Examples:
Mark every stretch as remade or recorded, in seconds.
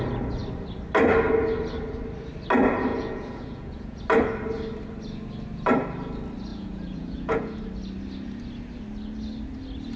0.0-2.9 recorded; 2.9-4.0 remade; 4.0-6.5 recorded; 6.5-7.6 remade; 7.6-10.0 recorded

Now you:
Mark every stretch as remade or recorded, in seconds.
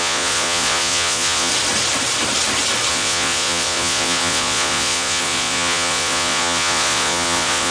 0.0-1.5 remade; 1.5-2.9 recorded; 2.9-7.7 remade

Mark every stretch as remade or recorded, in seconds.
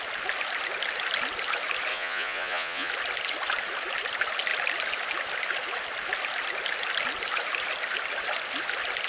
0.0-1.9 recorded; 1.9-2.9 remade; 2.9-9.1 recorded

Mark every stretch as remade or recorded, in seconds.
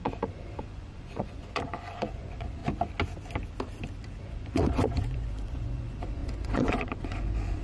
0.0-2.6 remade; 2.6-4.2 recorded; 4.2-7.6 remade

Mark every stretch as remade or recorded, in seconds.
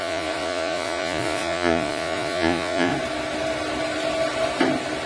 0.0-2.9 remade; 2.9-5.1 recorded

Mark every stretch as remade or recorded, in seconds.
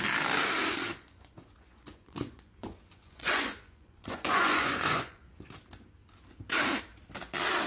0.0-0.9 recorded; 0.9-5.5 remade; 5.5-7.7 recorded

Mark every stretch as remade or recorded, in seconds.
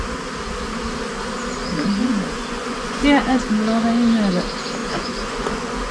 0.0-2.0 recorded; 2.0-3.4 remade; 3.4-4.8 recorded; 4.8-5.9 remade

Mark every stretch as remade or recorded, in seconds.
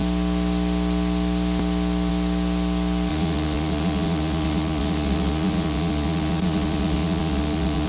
0.0-3.1 recorded; 3.1-7.9 remade